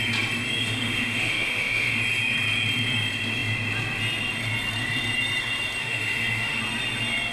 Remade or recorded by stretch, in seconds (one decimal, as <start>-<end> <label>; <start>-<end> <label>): 0.0-0.6 recorded; 0.6-2.0 remade; 2.0-5.8 recorded; 5.8-6.6 remade; 6.6-7.3 recorded